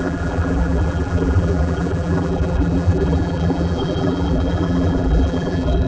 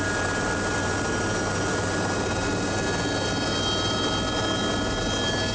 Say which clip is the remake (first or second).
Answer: first